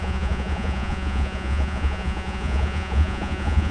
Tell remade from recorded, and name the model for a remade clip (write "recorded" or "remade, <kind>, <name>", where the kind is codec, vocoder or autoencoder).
remade, vocoder, Vocos